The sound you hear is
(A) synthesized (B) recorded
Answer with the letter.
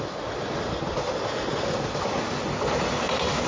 B